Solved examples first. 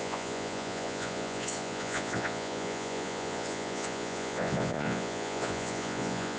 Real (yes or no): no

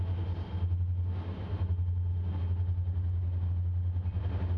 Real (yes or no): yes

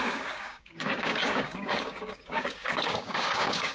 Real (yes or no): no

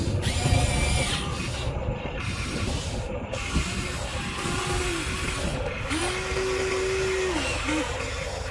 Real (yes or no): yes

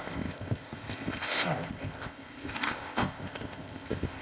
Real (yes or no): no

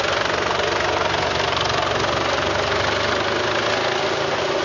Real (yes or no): yes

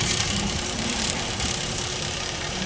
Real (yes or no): no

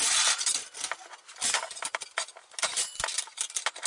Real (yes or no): yes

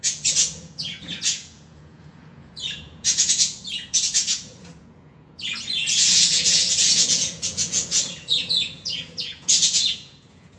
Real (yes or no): no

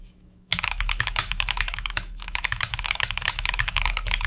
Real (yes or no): no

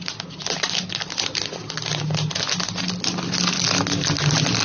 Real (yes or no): yes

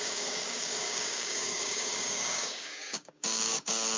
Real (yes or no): no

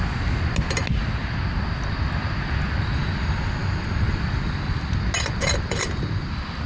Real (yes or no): yes